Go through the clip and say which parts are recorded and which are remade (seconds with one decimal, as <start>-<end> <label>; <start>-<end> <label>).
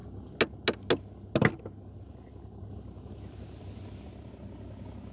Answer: 0.0-5.1 recorded